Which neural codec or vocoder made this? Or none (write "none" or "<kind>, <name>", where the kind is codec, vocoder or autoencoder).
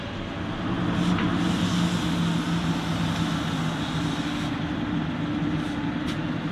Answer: none